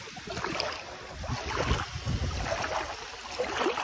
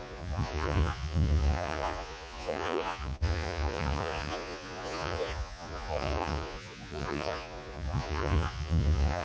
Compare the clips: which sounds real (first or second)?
first